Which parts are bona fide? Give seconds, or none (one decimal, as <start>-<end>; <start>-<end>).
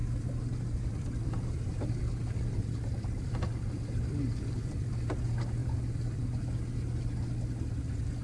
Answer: 4.9-5.6; 6.4-8.2